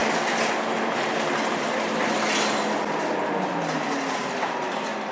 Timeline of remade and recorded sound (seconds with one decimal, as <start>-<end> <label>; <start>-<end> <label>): 0.0-5.1 recorded